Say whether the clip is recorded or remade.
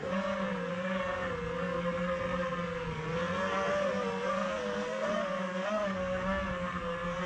remade